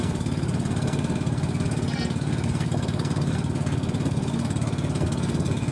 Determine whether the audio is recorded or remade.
remade